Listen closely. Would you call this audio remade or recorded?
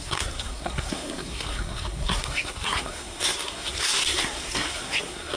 remade